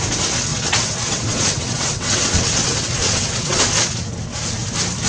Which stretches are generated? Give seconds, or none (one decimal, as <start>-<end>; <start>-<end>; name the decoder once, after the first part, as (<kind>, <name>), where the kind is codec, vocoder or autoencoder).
0.5-3.6 (vocoder, WaveNeXt)